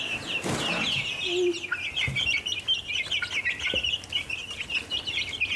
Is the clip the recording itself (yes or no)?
yes